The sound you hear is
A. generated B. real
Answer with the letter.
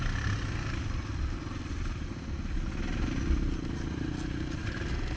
B